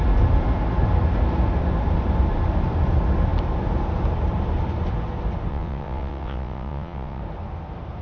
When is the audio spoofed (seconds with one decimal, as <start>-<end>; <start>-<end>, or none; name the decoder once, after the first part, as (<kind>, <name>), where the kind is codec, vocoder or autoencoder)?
5.5-7.2 (vocoder, WaveNeXt)